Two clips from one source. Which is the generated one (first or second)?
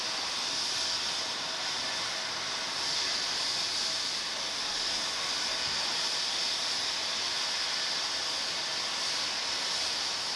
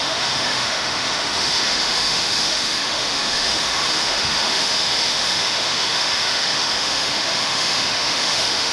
second